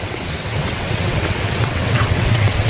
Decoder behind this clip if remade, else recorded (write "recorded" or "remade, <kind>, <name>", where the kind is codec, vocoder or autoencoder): remade, vocoder, WaveNeXt